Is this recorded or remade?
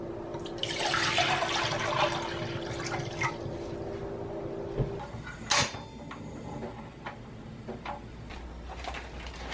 recorded